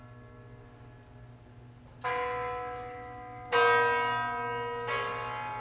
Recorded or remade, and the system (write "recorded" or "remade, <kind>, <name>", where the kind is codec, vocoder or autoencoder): recorded